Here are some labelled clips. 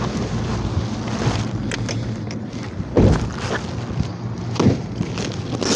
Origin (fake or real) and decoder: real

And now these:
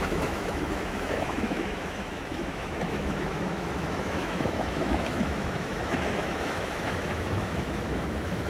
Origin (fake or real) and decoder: fake, autoencoder, DAC-VAE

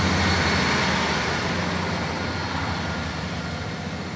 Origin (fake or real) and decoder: real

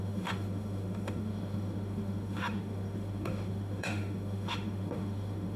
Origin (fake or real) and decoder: fake, autoencoder, DAC-VAE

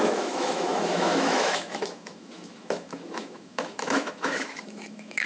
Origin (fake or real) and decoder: fake, autoencoder, DAC-VAE